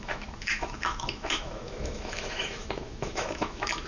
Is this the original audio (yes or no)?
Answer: no